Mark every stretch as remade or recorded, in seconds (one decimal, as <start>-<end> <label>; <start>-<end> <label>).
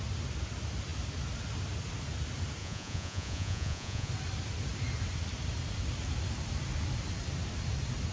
0.0-2.6 recorded; 2.6-4.1 remade; 4.1-8.1 recorded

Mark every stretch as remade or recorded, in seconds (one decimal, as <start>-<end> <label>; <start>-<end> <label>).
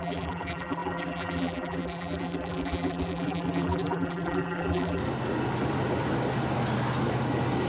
0.0-5.0 remade; 5.0-7.7 recorded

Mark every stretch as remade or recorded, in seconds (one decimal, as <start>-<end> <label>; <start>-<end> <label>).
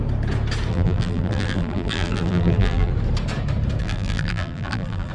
0.0-0.7 recorded; 0.7-2.9 remade; 2.9-3.8 recorded; 3.8-5.1 remade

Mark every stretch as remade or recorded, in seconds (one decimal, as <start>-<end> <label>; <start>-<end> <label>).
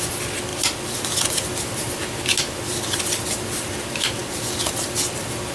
0.0-5.5 recorded